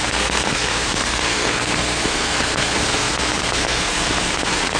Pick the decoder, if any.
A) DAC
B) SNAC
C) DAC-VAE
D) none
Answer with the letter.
B